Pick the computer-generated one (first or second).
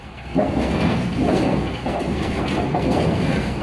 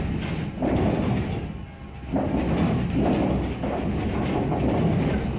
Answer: first